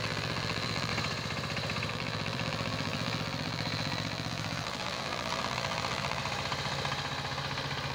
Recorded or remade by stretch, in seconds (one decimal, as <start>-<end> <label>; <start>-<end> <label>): 0.0-0.9 remade; 0.9-1.9 recorded; 1.9-6.2 remade; 6.2-7.9 recorded